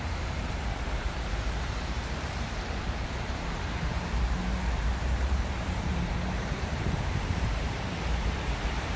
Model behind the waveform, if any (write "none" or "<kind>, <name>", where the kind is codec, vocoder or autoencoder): vocoder, BigVGAN v2